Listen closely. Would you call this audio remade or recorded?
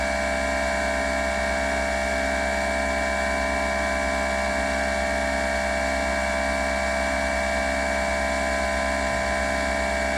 recorded